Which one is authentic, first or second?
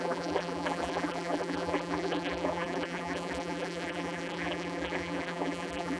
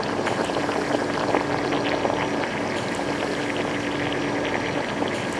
second